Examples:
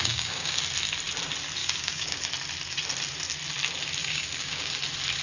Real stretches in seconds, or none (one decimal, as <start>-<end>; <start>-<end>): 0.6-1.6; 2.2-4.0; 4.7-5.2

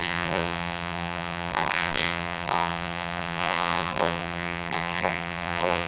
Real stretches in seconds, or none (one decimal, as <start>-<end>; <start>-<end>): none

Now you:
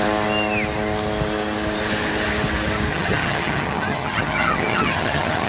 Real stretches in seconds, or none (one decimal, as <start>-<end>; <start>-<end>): 0.0-2.9

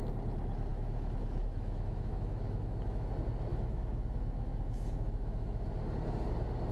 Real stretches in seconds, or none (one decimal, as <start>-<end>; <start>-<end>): 0.0-0.7; 3.1-3.5; 5.7-6.7

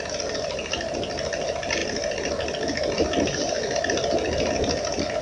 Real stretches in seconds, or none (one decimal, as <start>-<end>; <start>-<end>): 0.0-5.2

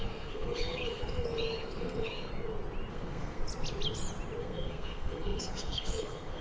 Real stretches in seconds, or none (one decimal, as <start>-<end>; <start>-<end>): 2.3-2.9; 3.4-4.4

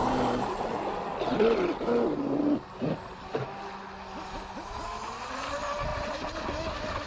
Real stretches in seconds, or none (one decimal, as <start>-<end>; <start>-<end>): 0.0-7.1

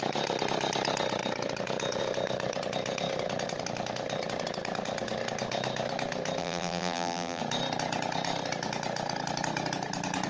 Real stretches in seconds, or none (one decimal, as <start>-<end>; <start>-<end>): 0.0-6.4; 7.4-10.3